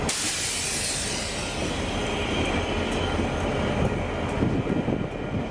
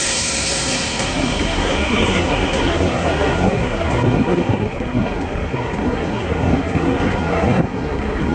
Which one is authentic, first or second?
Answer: first